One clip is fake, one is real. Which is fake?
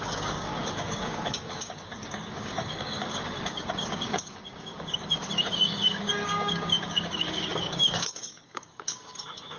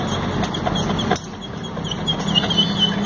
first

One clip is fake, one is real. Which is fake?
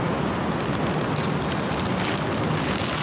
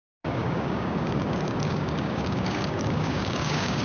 second